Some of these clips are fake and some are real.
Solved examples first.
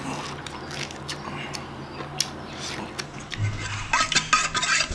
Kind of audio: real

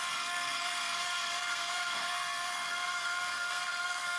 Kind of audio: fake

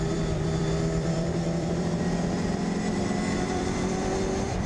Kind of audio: fake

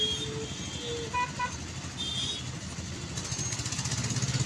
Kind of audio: real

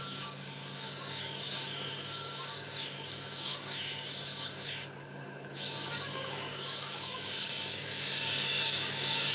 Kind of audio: fake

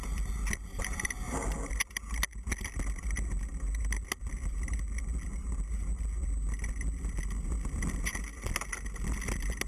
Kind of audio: real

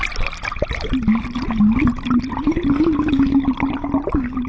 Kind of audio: real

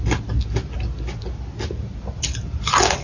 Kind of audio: real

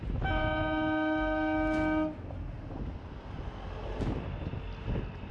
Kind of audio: real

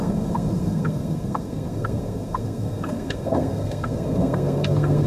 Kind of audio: fake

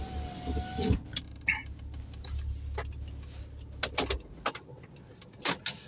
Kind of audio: real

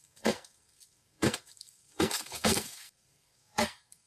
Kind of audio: fake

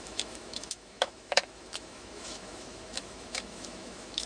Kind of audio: fake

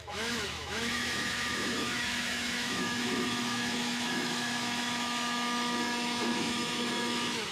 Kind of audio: fake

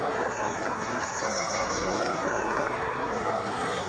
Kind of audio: fake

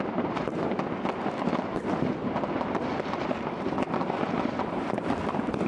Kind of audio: real